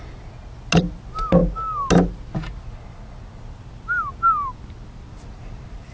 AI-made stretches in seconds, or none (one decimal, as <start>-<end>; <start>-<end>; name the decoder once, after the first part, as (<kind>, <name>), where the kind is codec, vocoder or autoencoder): none